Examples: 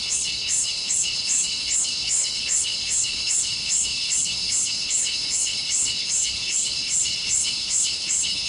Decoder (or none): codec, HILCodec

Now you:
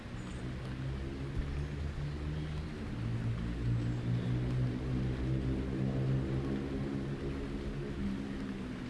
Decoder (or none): none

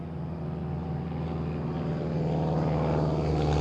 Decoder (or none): none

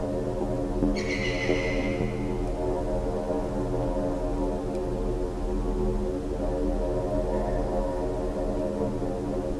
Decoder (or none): none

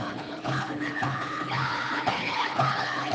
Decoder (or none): codec, HILCodec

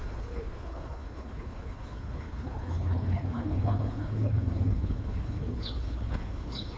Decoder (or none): codec, HILCodec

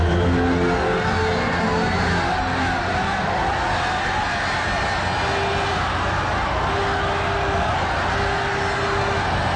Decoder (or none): none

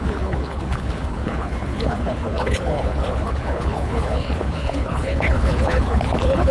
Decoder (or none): codec, HILCodec